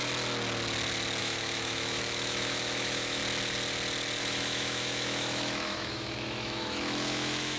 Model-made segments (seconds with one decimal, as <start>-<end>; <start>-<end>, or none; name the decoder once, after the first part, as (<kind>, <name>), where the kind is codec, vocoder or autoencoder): 1.2-3.2 (autoencoder, DAC-VAE); 4.2-7.6